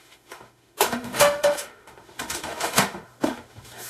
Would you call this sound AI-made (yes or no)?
yes